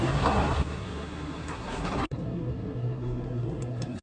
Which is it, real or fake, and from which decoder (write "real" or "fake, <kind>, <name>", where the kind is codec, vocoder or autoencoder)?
fake, codec, SNAC